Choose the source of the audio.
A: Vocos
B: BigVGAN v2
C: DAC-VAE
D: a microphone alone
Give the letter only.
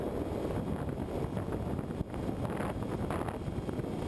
D